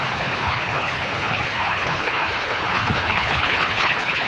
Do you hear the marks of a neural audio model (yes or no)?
yes